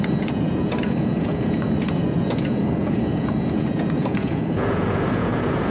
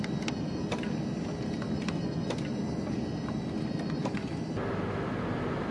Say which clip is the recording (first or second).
second